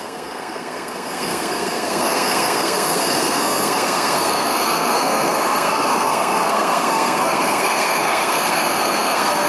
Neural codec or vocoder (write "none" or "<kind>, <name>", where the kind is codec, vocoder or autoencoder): codec, SNAC